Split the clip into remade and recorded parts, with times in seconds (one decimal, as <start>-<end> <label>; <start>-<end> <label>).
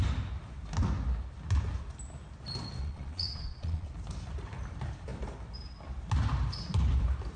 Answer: 0.0-2.8 recorded; 2.8-3.9 remade; 3.9-7.4 recorded